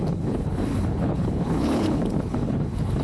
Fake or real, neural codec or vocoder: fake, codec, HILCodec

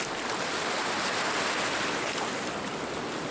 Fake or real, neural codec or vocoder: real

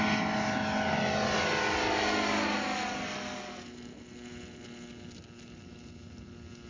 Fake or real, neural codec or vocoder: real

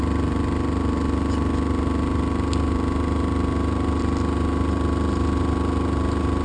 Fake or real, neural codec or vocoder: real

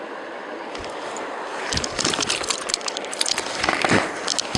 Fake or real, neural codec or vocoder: real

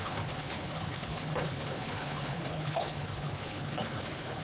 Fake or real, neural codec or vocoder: fake, codec, HILCodec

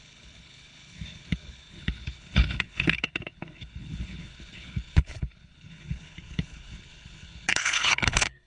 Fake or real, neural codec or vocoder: fake, codec, HILCodec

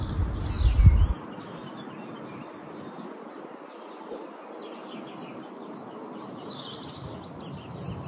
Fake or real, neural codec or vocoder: real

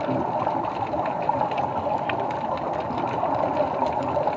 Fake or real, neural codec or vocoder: real